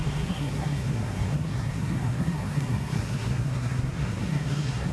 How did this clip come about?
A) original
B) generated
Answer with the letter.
B